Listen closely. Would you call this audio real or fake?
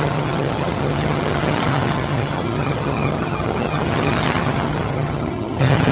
fake